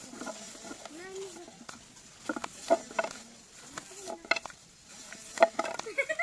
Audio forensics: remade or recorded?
recorded